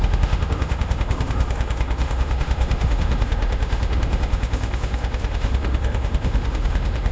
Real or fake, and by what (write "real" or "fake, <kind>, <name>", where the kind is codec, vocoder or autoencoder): fake, autoencoder, DAC-VAE